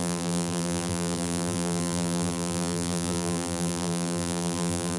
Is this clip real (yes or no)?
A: no